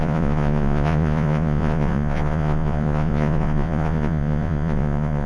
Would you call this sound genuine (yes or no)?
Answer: no